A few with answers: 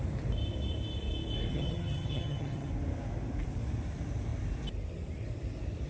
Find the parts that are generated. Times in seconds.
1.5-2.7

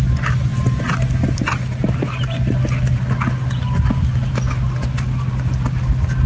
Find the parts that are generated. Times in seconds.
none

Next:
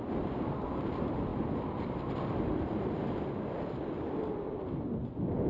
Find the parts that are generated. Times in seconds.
none